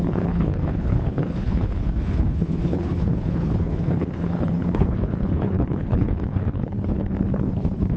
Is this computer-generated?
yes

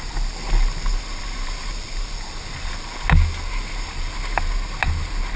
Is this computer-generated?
no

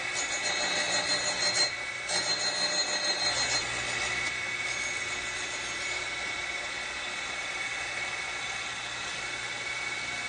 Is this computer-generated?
no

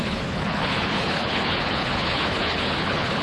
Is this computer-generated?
yes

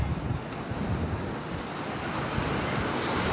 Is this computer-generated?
no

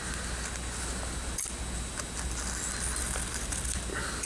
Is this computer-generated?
no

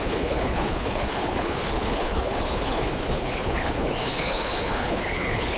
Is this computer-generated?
yes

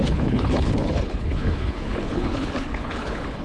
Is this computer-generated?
yes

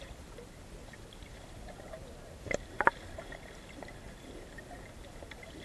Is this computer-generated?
no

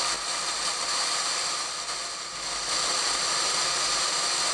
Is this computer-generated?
no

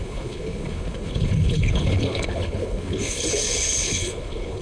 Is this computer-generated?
yes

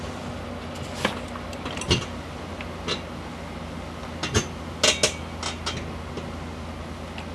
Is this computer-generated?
no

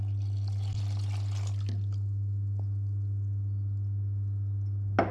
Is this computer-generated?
no